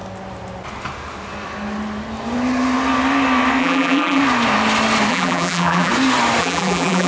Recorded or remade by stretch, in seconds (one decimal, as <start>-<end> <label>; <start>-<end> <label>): 0.0-3.6 recorded; 3.6-4.2 remade; 4.2-5.1 recorded; 5.1-5.9 remade; 5.9-6.4 recorded; 6.4-7.1 remade